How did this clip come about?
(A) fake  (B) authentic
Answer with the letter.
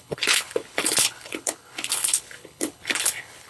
A